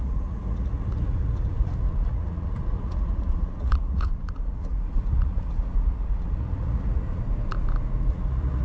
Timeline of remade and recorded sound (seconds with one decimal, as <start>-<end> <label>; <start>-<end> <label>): 0.0-7.2 remade; 7.2-8.1 recorded; 8.1-8.6 remade